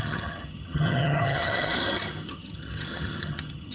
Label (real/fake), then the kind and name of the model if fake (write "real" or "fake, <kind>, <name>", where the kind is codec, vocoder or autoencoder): fake, vocoder, HiFi-GAN